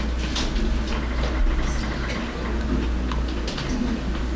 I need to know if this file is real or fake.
real